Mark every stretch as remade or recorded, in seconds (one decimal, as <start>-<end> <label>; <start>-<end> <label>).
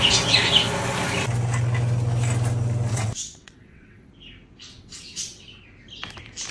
0.0-2.9 recorded; 2.9-4.1 remade; 4.1-4.7 recorded; 4.7-5.6 remade; 5.6-6.5 recorded